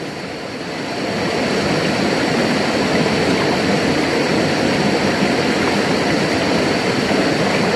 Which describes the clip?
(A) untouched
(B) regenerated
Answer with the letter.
A